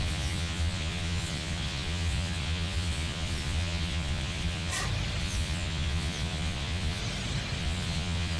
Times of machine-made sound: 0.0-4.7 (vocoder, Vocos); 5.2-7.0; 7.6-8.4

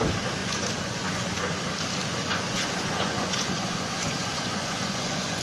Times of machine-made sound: 0.4-1.6 (vocoder, Vocos); 2.1-5.4

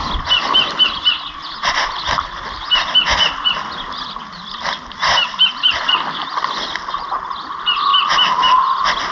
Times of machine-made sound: none

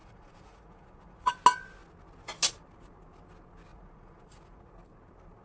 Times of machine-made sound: 0.0-1.3 (vocoder, Vocos); 3.7-4.7

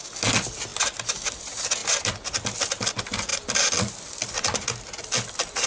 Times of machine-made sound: none